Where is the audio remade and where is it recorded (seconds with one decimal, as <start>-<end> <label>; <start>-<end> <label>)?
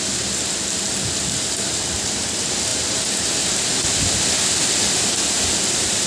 0.0-6.1 recorded